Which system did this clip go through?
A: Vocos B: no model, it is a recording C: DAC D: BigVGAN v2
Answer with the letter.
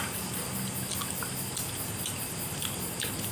B